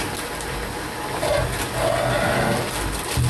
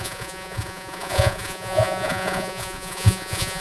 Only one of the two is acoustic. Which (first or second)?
first